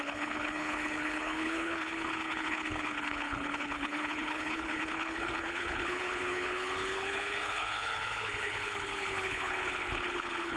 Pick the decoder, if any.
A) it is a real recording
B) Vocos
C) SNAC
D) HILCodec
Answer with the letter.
D